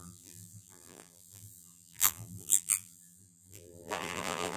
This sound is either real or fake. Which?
fake